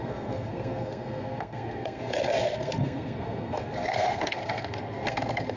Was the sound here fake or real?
fake